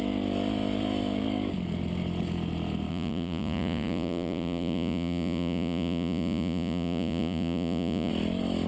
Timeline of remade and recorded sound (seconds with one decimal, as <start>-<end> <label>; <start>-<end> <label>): 0.0-2.9 recorded; 2.9-8.1 remade; 8.1-8.7 recorded